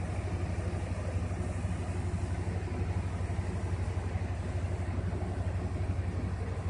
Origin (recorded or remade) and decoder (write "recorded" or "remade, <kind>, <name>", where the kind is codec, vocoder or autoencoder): recorded